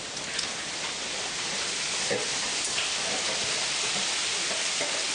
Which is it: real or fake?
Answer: real